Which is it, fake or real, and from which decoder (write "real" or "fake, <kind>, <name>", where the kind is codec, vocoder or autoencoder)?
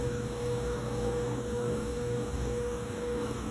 fake, codec, DAC